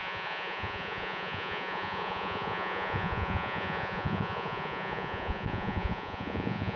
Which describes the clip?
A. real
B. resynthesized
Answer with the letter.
B